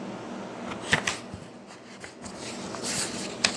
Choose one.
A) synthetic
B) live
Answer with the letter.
B